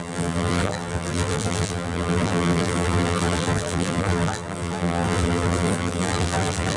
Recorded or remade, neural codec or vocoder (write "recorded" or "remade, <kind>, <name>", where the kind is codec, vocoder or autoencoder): remade, vocoder, BigVGAN v2